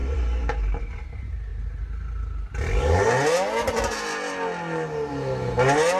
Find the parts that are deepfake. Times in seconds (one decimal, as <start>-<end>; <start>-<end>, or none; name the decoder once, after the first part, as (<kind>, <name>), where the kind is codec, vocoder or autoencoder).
0.0-0.8 (vocoder, BigVGAN v2)